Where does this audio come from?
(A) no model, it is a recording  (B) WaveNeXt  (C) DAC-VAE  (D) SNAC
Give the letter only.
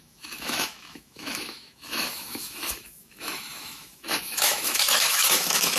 C